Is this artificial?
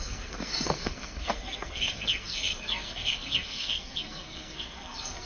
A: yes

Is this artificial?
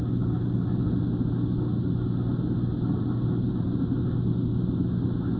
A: no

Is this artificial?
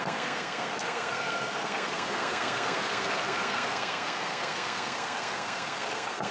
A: yes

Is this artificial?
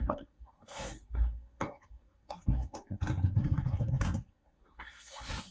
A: yes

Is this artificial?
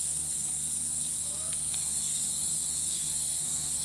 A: yes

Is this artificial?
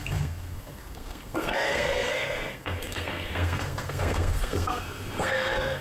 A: yes